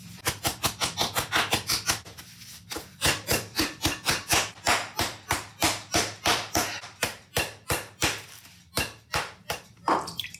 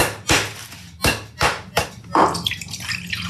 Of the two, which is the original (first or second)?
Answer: second